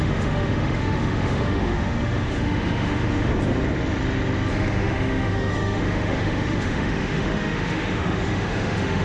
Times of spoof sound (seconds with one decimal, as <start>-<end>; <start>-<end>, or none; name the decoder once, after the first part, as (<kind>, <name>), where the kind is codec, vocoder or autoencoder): 0.0-3.3 (autoencoder, DAC-VAE); 4.5-9.0